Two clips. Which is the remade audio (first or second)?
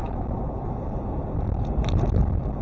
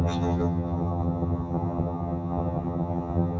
second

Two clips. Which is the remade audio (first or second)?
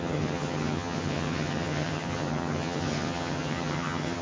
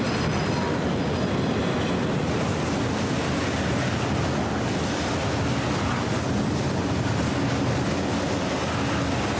first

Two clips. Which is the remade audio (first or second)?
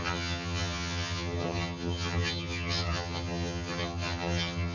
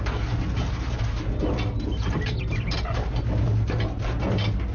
first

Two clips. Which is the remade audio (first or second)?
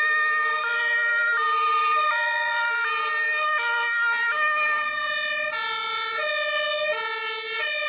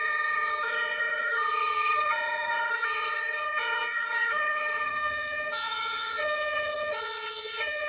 second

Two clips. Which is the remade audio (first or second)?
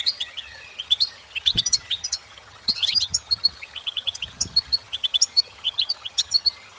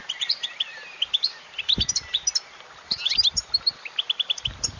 first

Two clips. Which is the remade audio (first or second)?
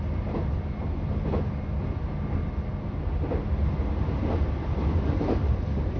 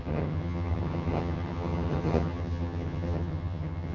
second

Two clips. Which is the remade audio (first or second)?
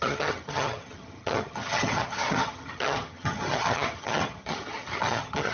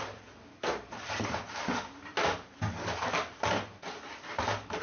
first